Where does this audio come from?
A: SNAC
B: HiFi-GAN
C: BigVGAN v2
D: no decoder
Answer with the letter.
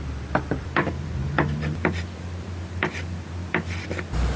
D